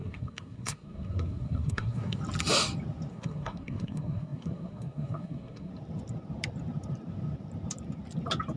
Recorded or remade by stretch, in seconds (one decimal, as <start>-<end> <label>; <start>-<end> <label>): 0.0-2.2 remade; 2.2-3.1 recorded; 3.1-5.7 remade; 5.7-8.6 recorded